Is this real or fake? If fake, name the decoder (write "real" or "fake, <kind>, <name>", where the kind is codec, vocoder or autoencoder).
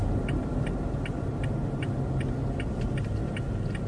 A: real